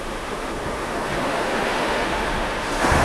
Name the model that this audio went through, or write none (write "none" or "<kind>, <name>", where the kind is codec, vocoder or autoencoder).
autoencoder, DAC-VAE